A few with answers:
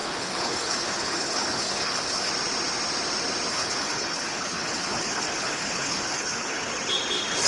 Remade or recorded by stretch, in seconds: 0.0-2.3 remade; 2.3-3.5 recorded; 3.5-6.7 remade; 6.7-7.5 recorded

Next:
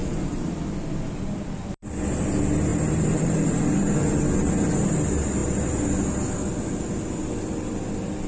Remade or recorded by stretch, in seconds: 0.0-0.5 remade; 0.5-2.7 recorded; 2.7-3.4 remade; 3.4-8.3 recorded

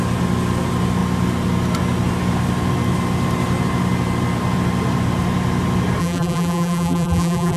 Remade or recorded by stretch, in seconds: 0.0-6.0 recorded; 6.0-7.6 remade

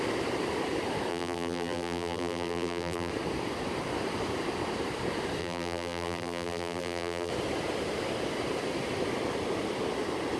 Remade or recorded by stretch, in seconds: 0.0-1.1 recorded; 1.1-3.1 remade; 3.1-5.4 recorded; 5.4-7.3 remade; 7.3-10.4 recorded

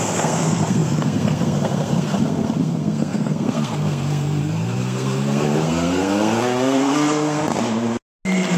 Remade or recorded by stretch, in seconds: 0.0-7.4 remade; 7.4-8.6 recorded

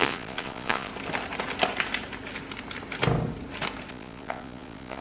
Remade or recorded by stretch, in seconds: 0.0-0.9 remade; 0.9-3.9 recorded; 3.9-5.0 remade